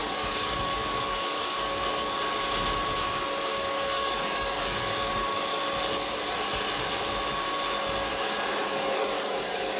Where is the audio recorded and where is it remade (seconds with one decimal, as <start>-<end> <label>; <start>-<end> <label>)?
0.0-2.2 remade; 2.2-3.5 recorded; 3.5-5.6 remade; 5.6-8.1 recorded; 8.1-9.8 remade